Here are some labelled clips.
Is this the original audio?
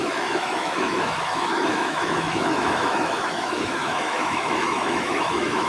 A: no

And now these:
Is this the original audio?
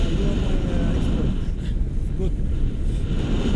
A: yes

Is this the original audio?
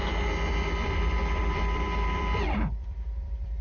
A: no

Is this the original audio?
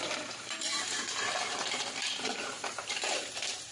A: no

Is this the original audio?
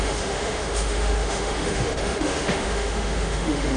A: no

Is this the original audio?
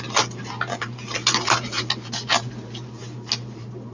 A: yes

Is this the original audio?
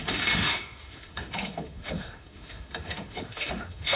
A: no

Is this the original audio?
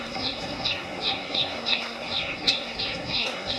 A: no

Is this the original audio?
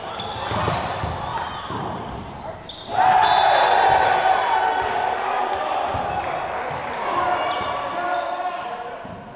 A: yes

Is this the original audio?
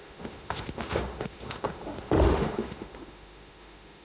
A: no